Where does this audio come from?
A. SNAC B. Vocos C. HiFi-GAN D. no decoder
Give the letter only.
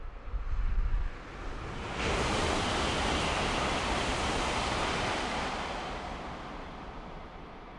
D